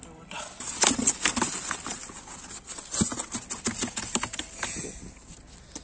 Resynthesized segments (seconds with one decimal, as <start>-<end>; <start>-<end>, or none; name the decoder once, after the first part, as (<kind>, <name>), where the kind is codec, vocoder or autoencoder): none

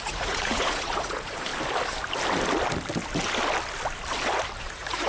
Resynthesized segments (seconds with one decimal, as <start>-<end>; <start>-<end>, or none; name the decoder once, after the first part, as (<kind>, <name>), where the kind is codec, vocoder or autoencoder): 0.0-1.5 (vocoder, Vocos); 4.6-5.1

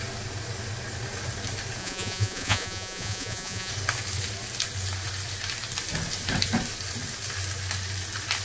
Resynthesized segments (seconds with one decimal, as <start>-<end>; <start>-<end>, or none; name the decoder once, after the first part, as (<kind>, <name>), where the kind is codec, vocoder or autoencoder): 1.8-3.7 (vocoder, Vocos)

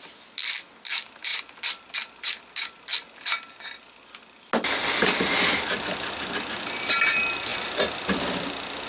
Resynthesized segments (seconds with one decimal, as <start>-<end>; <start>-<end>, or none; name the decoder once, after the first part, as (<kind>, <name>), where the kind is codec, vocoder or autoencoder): none

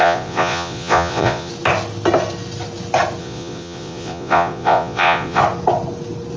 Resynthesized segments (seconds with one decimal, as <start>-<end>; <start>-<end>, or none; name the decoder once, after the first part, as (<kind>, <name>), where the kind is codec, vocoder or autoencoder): 0.0-1.5 (vocoder, Vocos); 3.2-5.4